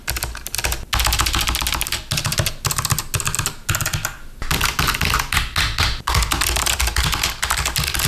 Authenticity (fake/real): real